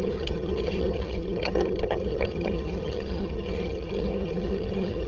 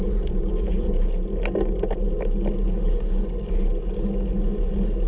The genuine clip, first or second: second